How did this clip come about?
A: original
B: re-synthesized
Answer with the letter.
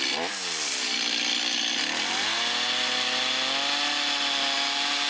A